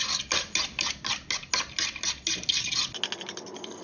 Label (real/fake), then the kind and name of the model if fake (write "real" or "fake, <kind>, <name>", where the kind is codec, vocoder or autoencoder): real